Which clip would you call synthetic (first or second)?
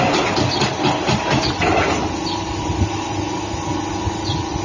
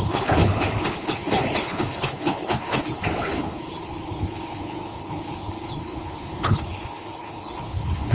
second